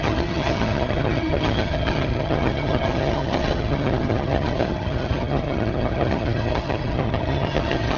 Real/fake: fake